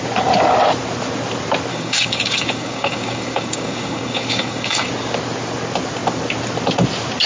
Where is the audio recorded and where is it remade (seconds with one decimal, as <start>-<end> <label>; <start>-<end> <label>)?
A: 0.0-1.7 recorded; 1.7-4.9 remade; 4.9-7.3 recorded